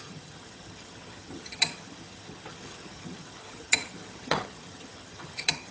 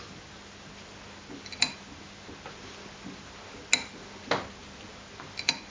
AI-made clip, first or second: first